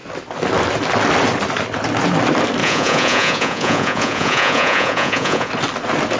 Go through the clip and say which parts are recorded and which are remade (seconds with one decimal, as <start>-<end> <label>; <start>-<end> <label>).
0.0-2.6 recorded; 2.6-5.5 remade; 5.5-6.2 recorded